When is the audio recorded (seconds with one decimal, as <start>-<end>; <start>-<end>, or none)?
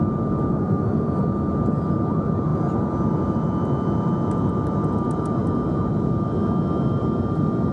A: 0.0-0.5; 1.2-7.7